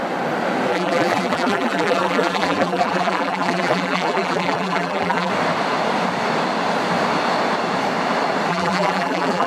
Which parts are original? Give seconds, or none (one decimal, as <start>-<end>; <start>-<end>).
0.0-0.7; 5.3-8.5